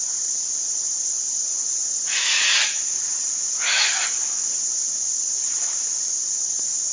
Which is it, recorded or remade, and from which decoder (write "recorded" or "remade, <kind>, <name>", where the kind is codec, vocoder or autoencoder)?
remade, vocoder, Vocos